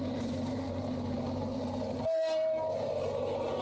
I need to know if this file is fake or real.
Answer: fake